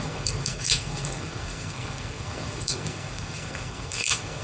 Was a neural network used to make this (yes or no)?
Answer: yes